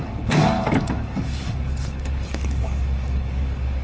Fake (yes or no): yes